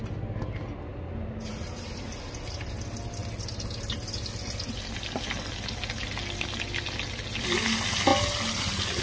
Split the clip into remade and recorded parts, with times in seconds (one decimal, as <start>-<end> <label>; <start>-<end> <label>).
0.0-9.0 recorded